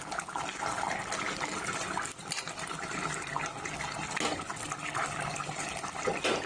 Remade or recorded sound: recorded